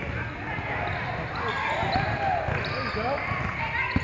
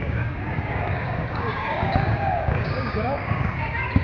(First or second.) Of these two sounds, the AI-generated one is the second